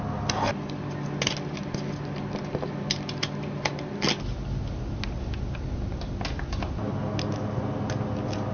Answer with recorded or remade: recorded